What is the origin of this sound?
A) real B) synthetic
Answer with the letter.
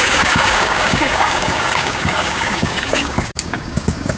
B